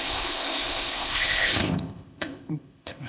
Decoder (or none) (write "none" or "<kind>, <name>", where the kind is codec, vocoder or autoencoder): codec, ZipCodec